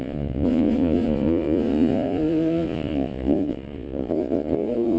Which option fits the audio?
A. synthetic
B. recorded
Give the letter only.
A